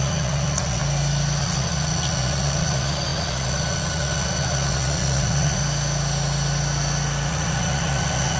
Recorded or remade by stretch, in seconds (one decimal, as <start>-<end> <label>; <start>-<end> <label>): 0.0-0.8 remade; 0.8-1.4 recorded; 1.4-5.6 remade; 5.6-7.3 recorded; 7.3-8.4 remade